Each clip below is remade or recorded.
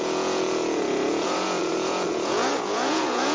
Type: remade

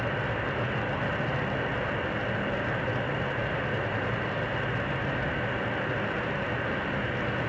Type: recorded